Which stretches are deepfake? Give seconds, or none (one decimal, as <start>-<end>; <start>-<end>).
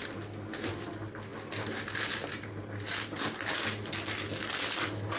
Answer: none